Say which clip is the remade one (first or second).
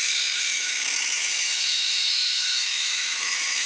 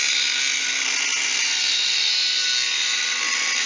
first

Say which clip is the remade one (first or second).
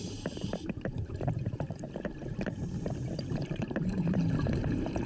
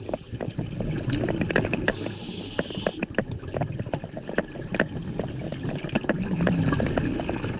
first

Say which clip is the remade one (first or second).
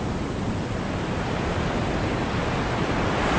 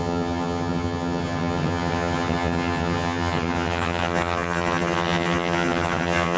second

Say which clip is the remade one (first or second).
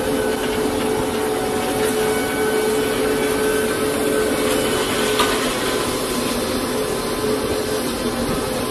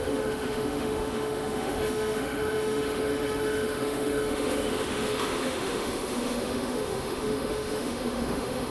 second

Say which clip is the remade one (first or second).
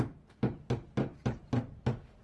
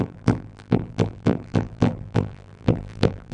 second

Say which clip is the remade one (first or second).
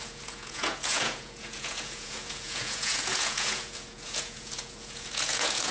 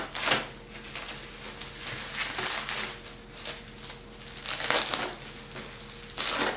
first